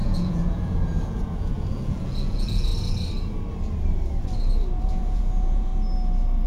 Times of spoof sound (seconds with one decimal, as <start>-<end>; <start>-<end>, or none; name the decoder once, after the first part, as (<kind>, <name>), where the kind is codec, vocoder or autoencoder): 0.0-2.7 (vocoder, Vocos); 4.8-5.7